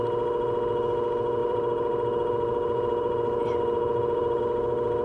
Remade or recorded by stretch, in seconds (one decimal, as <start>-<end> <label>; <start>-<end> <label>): 0.0-1.4 recorded; 1.4-4.4 remade; 4.4-5.0 recorded